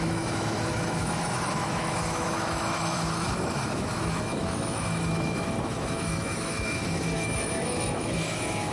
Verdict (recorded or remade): remade